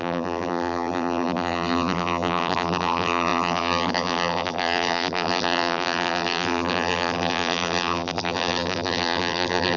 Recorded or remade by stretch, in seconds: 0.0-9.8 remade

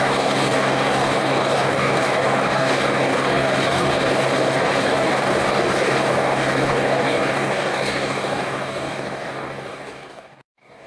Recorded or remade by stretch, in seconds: 0.0-10.9 remade

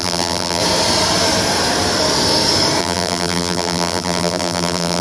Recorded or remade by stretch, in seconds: 0.0-0.6 remade; 0.6-2.8 recorded; 2.8-5.0 remade

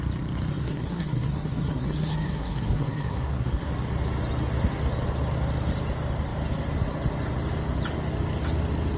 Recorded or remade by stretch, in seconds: 0.0-0.5 recorded; 0.5-3.7 remade; 3.7-9.0 recorded

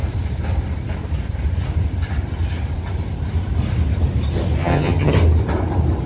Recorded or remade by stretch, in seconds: 0.0-4.6 recorded; 4.6-5.1 remade; 5.1-6.1 recorded

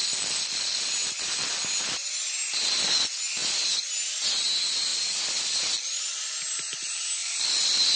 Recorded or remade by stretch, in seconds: 0.0-4.9 recorded; 4.9-5.5 remade; 5.5-7.2 recorded; 7.2-8.0 remade